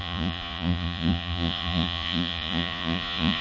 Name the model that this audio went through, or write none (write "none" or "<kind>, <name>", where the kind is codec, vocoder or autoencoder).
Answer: vocoder, Vocos